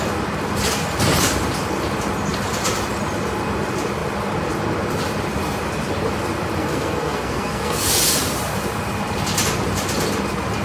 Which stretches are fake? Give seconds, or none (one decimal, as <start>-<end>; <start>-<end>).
6.6-7.9